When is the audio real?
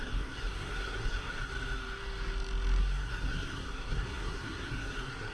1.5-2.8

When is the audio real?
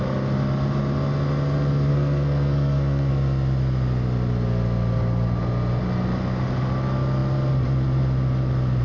0.0-1.9; 3.1-8.8